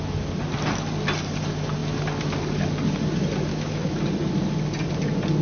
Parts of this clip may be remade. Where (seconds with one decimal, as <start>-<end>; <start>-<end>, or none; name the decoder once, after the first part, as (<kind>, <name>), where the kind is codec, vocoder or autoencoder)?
3.5-4.0 (autoencoder, DAC-VAE)